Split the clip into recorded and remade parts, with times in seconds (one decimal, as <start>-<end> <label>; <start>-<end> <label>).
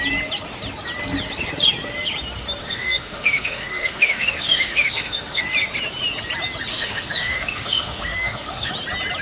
0.0-2.6 recorded; 2.6-5.4 remade; 5.4-6.7 recorded; 6.7-8.7 remade; 8.7-9.2 recorded